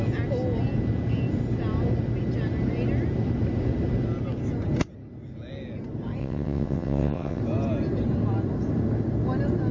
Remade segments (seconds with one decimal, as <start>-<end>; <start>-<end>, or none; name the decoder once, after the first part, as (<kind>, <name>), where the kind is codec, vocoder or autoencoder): 6.2-7.4 (vocoder, WaveNeXt)